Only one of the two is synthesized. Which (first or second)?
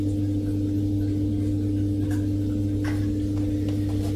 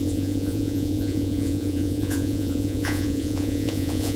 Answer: second